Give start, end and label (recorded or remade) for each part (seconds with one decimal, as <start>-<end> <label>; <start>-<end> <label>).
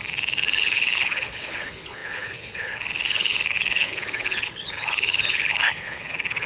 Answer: 0.0-0.6 recorded; 0.6-6.5 remade